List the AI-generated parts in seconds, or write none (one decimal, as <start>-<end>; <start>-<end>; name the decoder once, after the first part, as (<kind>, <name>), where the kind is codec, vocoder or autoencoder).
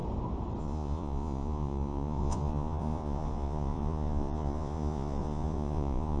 0.6-6.2 (vocoder, Vocos)